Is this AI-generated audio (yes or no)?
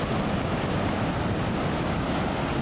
no